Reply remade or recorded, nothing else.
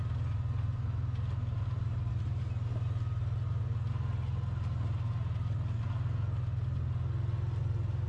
recorded